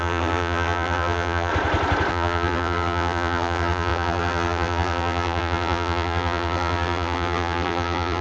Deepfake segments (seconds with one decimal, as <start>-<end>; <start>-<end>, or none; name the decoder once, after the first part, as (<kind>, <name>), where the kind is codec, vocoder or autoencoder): 0.0-1.5 (vocoder, BigVGAN v2); 2.1-8.2